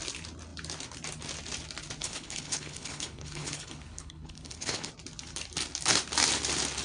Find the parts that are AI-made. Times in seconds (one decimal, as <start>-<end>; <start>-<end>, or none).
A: 2.0-4.9